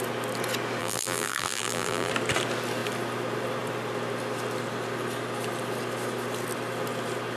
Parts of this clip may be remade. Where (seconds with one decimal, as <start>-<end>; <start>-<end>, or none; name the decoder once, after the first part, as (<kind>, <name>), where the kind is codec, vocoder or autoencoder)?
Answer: 0.8-2.1 (vocoder, BigVGAN v2)

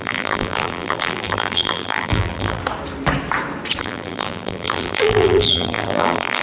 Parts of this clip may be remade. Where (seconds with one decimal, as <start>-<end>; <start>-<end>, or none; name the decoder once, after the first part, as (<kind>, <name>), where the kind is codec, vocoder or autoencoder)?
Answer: 0.0-2.6 (vocoder, BigVGAN v2); 3.8-6.4